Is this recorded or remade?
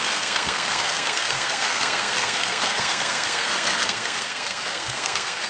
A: remade